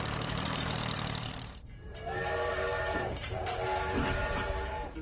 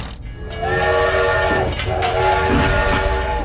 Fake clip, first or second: first